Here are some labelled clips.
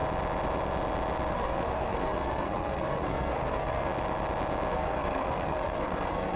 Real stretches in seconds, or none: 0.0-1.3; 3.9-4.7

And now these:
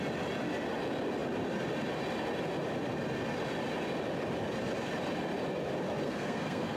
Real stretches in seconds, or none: 0.0-6.0

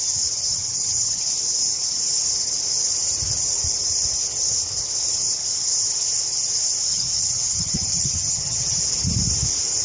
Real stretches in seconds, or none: 0.0-0.5; 1.2-6.9; 8.8-9.8

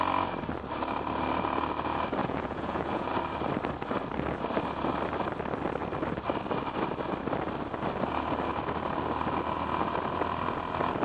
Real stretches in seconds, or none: 0.0-2.2; 3.1-11.0